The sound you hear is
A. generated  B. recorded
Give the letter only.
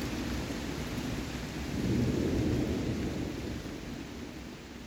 B